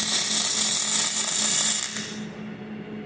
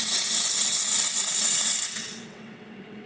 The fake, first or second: second